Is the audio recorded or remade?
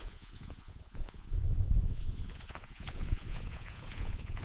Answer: remade